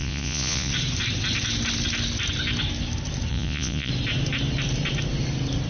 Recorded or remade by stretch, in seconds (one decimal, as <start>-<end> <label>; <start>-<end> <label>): 0.0-0.7 remade; 0.7-3.3 recorded; 3.3-3.9 remade; 3.9-5.7 recorded